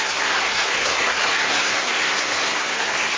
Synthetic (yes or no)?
yes